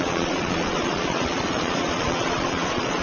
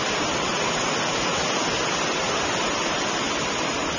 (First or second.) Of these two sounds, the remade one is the first